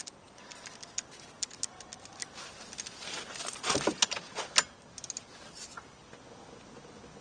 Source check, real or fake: real